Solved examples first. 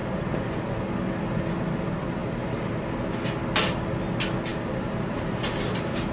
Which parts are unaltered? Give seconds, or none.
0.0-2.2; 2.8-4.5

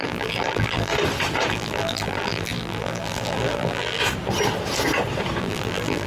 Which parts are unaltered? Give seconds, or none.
0.9-1.5; 4.0-5.4

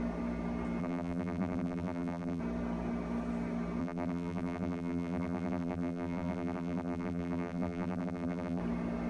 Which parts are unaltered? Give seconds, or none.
0.0-0.8; 2.4-3.8; 8.6-9.1

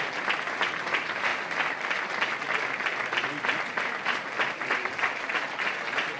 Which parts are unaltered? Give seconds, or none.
0.0-6.2

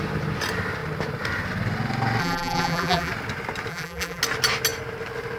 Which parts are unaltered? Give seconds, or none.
0.0-2.2; 3.1-3.7; 4.2-5.4